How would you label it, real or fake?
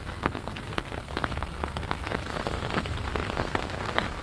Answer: fake